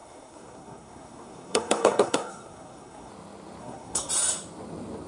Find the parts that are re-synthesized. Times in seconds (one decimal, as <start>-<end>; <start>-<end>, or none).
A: 0.0-3.1; 3.6-4.1

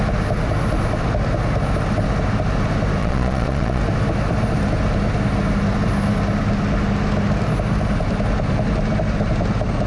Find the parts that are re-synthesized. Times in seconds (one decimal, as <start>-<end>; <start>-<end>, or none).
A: 3.0-3.8

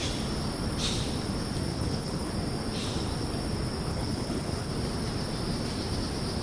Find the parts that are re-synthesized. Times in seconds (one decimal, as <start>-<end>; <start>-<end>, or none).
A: 1.7-2.3; 3.9-4.7

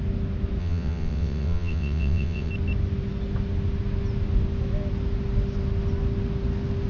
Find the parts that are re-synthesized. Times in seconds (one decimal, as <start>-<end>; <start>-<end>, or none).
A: 0.6-2.5

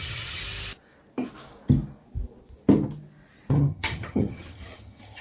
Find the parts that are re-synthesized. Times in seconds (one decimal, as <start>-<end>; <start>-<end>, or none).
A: 0.0-0.4; 3.5-5.2

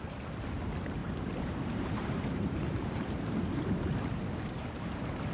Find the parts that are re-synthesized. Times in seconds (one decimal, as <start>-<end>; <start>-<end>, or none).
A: 1.0-4.2

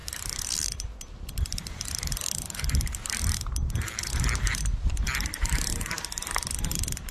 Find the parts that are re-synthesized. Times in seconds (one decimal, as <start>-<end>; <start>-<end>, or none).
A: 0.0-3.7